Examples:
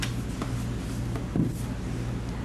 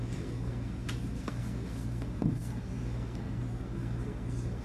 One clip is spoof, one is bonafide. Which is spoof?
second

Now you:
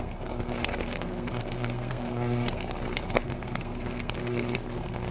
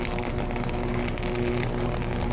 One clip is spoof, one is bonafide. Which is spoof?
first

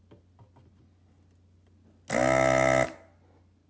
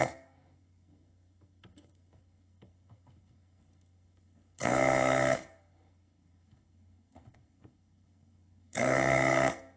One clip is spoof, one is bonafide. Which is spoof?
second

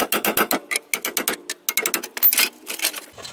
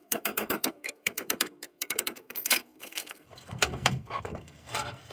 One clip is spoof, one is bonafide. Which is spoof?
second